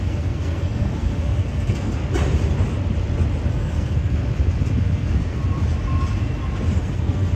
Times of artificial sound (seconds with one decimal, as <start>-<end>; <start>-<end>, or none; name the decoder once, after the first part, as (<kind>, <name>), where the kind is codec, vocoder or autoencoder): 0.0-2.0 (codec, SNAC); 3.5-4.2; 4.8-5.4; 6.8-7.4